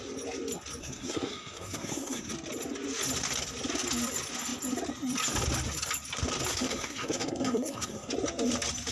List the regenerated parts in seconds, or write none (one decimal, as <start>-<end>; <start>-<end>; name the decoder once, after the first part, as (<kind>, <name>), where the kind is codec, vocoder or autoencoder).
0.8-2.3 (codec, SNAC); 6.5-8.1